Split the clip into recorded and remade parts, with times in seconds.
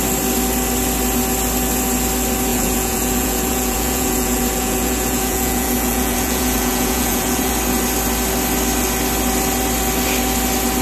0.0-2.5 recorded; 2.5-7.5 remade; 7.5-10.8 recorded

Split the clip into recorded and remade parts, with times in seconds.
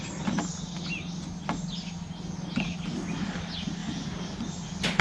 0.0-5.0 recorded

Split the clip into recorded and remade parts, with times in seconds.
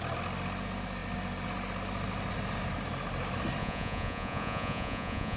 0.0-3.6 recorded; 3.6-5.4 remade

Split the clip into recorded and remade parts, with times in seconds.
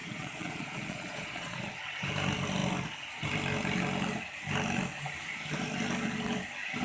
0.0-1.7 remade; 1.7-6.8 recorded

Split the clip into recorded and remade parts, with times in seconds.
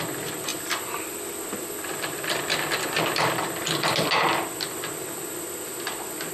0.0-6.3 recorded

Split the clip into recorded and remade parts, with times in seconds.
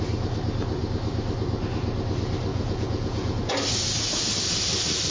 0.0-2.5 recorded; 2.5-3.4 remade; 3.4-5.1 recorded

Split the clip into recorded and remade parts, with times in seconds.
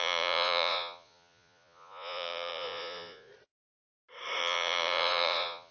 0.0-3.3 remade; 3.3-4.4 recorded; 4.4-5.7 remade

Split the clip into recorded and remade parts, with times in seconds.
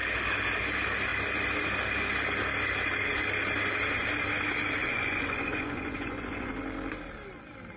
0.0-4.8 recorded; 4.8-6.5 remade; 6.5-7.8 recorded